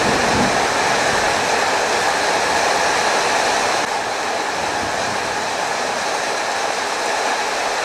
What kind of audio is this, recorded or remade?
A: recorded